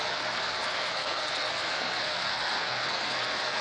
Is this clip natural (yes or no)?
no